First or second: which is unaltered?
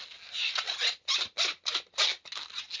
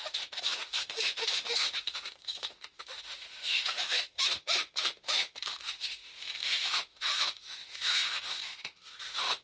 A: first